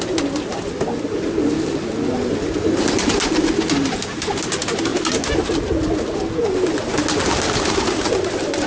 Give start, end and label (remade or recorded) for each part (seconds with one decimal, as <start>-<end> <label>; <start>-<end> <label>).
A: 0.0-8.7 recorded